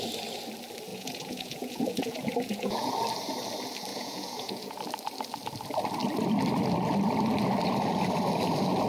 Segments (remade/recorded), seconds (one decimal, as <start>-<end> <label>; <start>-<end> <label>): 0.0-0.9 recorded; 0.9-2.9 remade; 2.9-3.9 recorded; 3.9-4.8 remade; 4.8-8.9 recorded

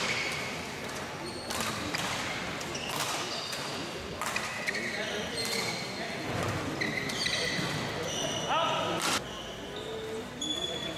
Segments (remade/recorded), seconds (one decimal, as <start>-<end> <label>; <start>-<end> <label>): 0.0-11.0 recorded

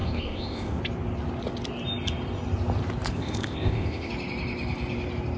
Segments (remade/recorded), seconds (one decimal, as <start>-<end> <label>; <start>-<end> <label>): 0.0-0.8 remade; 0.8-3.1 recorded; 3.1-4.1 remade; 4.1-5.4 recorded

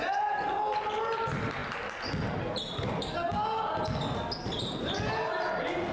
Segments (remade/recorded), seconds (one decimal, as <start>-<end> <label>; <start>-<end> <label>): 0.0-5.9 recorded

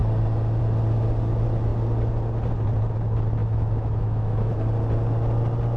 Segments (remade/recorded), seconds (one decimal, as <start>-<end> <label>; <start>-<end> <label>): 0.0-3.4 recorded; 3.4-4.7 remade; 4.7-5.8 recorded

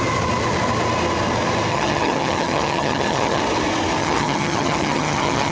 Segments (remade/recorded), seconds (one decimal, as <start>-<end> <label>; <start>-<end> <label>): 0.0-1.7 recorded; 1.7-3.4 remade; 3.4-4.0 recorded; 4.0-5.5 remade

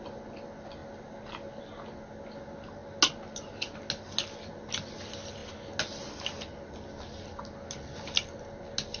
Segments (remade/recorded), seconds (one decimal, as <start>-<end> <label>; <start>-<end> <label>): 0.0-9.0 recorded

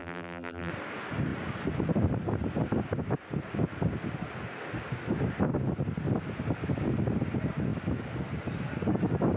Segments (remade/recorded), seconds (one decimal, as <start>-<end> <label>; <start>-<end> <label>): 0.0-0.7 remade; 0.7-9.4 recorded